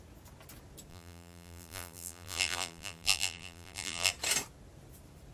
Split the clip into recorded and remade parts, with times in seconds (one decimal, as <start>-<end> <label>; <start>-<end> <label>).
0.0-0.9 recorded; 0.9-4.1 remade; 4.1-5.3 recorded